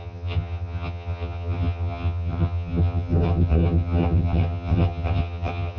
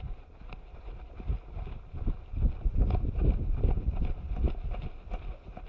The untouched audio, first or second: second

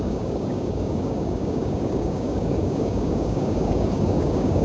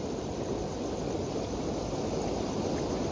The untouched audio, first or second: second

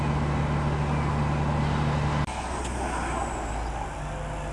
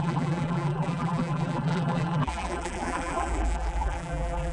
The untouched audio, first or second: first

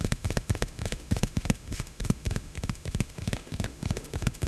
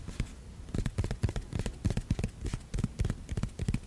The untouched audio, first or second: second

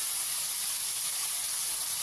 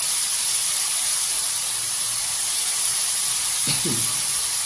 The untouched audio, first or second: first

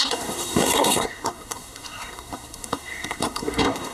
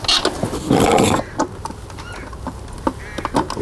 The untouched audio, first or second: second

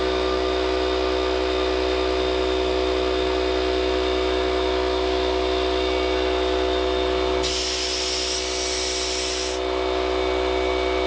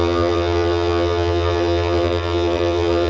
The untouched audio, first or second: first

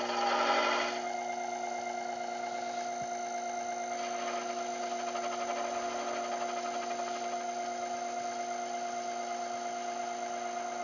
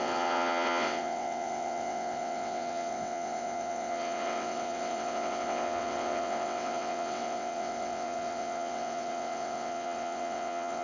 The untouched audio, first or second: first